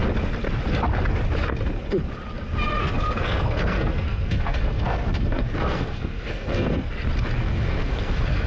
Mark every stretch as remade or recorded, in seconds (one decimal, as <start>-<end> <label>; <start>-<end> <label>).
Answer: 0.0-2.8 recorded; 2.8-6.9 remade; 6.9-7.4 recorded; 7.4-8.5 remade